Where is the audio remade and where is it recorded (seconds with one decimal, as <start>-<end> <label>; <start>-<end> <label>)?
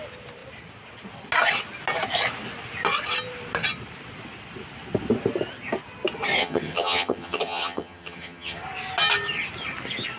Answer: 0.0-6.4 recorded; 6.4-8.6 remade; 8.6-10.2 recorded